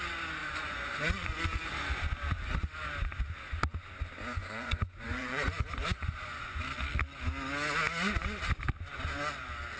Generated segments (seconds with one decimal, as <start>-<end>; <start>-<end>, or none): 0.4-1.4; 4.4-6.6

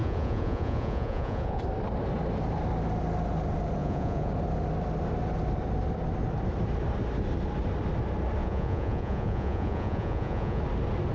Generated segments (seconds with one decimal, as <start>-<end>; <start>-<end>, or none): 0.0-1.6; 3.8-4.3; 8.4-10.6

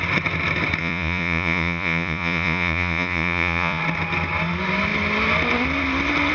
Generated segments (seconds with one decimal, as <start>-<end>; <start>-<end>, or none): 0.8-3.8

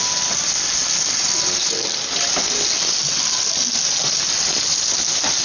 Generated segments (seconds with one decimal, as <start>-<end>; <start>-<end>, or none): none

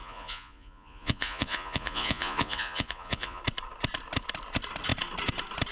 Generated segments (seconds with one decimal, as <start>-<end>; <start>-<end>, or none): 0.0-3.4

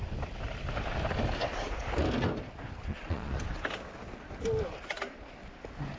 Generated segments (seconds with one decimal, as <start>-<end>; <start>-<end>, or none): 2.9-3.4

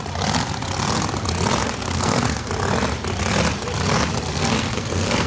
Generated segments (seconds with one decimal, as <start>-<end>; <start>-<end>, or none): 1.6-2.5; 4.3-5.3

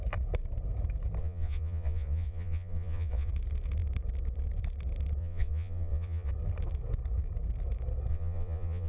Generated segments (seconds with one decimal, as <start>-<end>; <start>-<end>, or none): 1.2-3.3; 5.2-6.3; 8.1-8.9